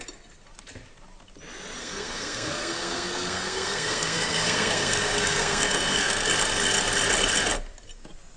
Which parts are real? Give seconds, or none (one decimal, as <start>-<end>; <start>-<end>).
0.0-1.8; 6.3-8.4